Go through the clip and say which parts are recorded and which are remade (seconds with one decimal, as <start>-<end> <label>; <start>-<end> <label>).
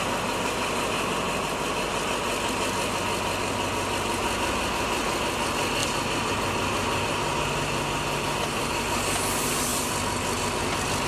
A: 0.0-11.1 recorded